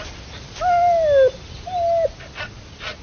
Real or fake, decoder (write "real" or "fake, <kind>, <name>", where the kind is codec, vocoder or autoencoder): real